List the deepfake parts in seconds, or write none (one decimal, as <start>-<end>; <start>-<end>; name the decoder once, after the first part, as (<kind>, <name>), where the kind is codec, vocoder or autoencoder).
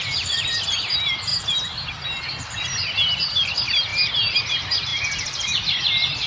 none